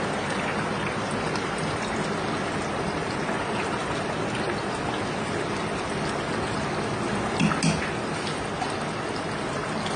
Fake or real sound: real